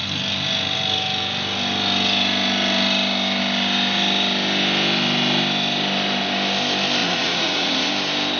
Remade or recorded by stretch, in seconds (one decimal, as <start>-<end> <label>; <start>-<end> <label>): 0.0-7.0 recorded; 7.0-7.9 remade; 7.9-8.4 recorded